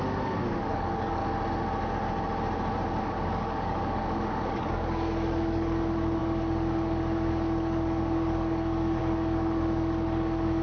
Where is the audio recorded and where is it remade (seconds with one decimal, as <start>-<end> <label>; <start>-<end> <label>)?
0.0-1.2 remade; 1.2-3.0 recorded; 3.0-10.6 remade